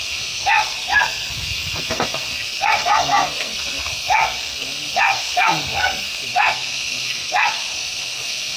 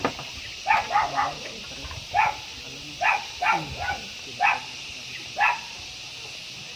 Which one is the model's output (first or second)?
first